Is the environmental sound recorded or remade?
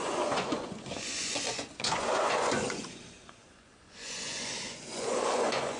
remade